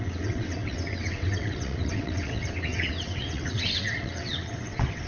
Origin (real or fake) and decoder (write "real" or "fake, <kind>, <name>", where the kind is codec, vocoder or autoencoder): fake, vocoder, WaveNeXt